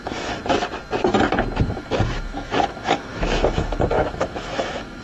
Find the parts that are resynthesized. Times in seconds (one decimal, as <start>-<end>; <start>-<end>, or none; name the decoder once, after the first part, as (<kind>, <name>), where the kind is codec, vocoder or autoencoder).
0.0-0.4 (autoencoder, DAC-VAE); 1.6-5.0